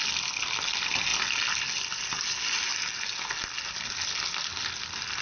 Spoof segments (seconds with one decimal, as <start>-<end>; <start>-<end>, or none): none